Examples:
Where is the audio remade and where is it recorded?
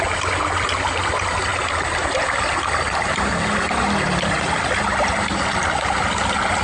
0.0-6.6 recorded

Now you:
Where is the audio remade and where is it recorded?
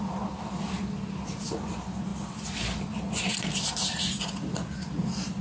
0.0-2.1 recorded; 2.1-2.9 remade; 2.9-5.4 recorded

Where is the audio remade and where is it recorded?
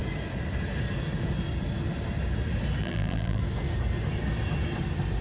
0.0-2.8 recorded; 2.8-3.4 remade; 3.4-5.2 recorded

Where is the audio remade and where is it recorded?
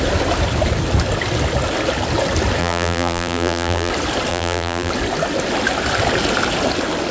0.0-2.6 recorded; 2.6-3.9 remade; 3.9-4.3 recorded; 4.3-4.9 remade; 4.9-7.1 recorded